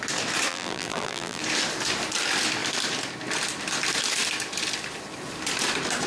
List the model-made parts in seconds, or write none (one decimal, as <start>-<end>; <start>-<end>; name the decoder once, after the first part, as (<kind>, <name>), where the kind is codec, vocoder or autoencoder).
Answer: 0.5-1.4 (vocoder, BigVGAN v2)